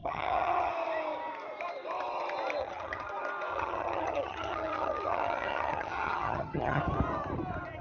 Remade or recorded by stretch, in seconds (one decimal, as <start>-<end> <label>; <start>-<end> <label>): 0.0-0.7 remade; 0.7-2.6 recorded; 2.6-3.1 remade; 3.1-3.5 recorded; 3.5-6.8 remade; 6.8-7.8 recorded